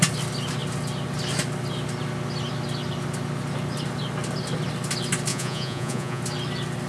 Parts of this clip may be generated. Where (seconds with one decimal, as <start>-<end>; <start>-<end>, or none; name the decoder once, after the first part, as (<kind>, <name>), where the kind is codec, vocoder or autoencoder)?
5.3-6.2 (vocoder, Vocos)